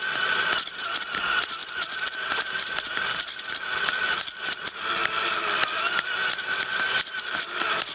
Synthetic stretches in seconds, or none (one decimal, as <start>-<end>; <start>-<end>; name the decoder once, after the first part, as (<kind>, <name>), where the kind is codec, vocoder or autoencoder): 1.6-4.4 (vocoder, BigVGAN v2)